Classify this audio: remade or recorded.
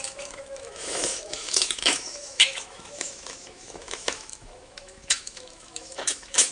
remade